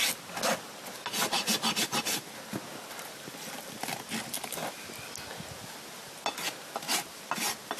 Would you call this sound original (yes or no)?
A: yes